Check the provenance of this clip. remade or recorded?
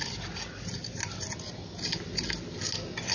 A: recorded